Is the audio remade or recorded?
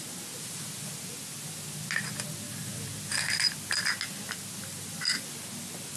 recorded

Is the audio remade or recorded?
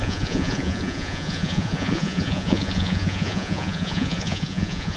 remade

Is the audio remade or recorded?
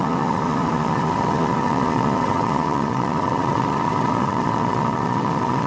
remade